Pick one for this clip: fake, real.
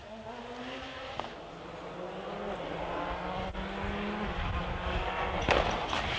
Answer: real